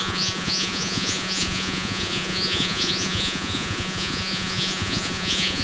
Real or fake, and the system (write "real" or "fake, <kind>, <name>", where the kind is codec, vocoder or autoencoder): fake, vocoder, Vocos